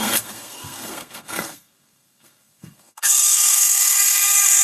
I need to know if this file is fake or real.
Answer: fake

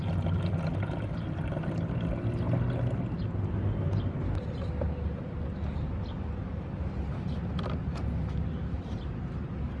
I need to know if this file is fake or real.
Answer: real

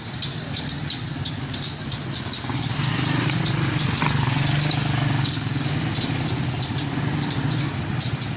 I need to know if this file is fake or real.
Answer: real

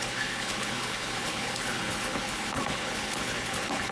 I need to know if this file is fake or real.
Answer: fake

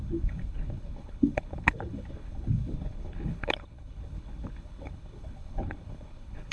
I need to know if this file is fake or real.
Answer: fake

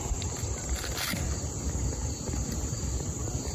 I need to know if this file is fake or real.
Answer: real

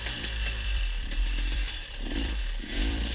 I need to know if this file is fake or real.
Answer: fake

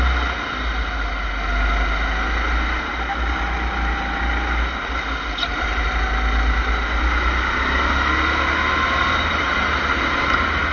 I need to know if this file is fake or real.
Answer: real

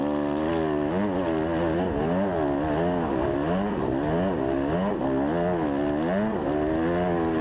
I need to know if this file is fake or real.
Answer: real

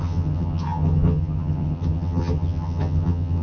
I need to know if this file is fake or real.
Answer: fake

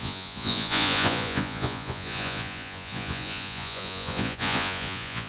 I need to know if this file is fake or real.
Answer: fake